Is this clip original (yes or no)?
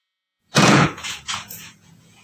no